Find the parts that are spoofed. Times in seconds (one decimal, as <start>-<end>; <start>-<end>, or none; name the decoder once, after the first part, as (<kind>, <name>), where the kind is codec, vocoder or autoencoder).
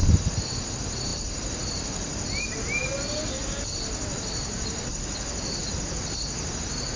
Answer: none